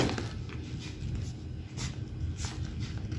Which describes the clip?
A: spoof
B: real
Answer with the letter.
B